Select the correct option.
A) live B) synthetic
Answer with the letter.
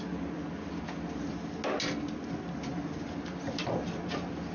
A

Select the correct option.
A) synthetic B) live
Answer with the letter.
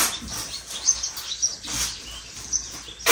B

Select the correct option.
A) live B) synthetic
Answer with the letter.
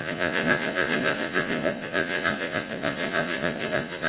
B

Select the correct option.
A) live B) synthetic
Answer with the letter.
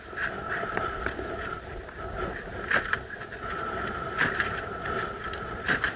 A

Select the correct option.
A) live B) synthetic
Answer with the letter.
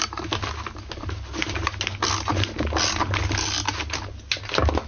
A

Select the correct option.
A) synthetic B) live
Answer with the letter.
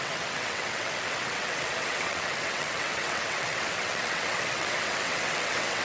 A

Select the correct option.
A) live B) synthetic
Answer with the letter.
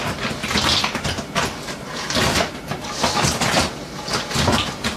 A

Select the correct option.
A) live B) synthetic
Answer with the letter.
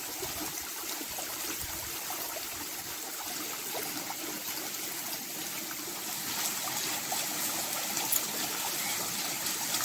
A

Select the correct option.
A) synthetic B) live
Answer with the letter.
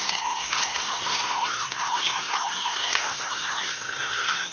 A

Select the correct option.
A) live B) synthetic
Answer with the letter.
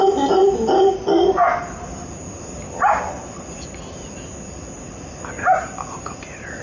A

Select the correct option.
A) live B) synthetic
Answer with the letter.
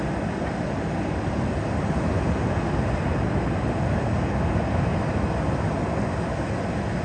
A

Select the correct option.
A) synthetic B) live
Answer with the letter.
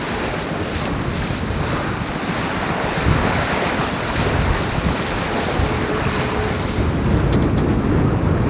B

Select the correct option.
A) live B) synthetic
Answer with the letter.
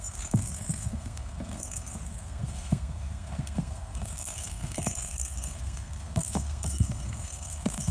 B